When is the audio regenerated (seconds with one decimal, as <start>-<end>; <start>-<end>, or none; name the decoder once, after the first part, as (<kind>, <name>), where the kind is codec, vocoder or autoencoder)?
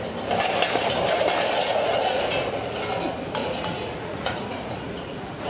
1.6-2.8 (vocoder, Vocos); 3.4-5.5